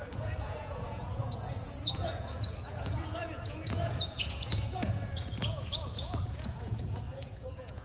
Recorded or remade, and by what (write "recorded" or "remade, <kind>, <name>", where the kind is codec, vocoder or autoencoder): remade, vocoder, Vocos